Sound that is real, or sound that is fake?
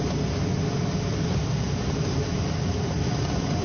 real